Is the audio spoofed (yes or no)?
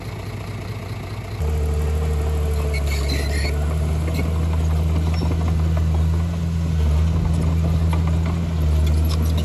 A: no